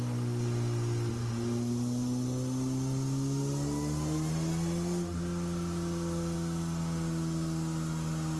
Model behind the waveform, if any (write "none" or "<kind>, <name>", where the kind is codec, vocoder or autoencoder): none